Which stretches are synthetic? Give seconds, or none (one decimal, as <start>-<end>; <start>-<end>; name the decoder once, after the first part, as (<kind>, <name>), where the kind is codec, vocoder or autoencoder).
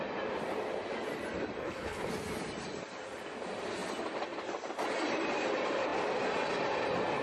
1.6-2.1 (codec, HILCodec)